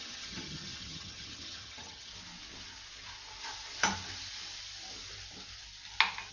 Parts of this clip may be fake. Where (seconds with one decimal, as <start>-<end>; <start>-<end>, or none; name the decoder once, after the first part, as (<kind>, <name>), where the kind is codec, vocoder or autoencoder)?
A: 0.0-2.1 (vocoder, HiFi-GAN)